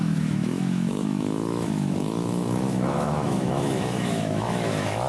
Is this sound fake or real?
fake